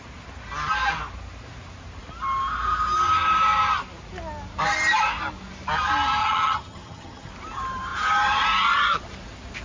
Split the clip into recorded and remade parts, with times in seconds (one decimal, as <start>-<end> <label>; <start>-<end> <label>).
0.0-6.2 recorded; 6.2-7.3 remade; 7.3-9.6 recorded